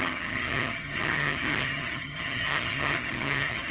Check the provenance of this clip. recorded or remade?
remade